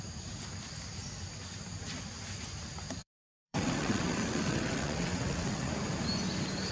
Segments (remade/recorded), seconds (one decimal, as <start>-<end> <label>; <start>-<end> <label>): 0.0-3.0 recorded; 3.0-5.7 remade; 5.7-6.7 recorded